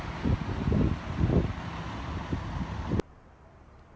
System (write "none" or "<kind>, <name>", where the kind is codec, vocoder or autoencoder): none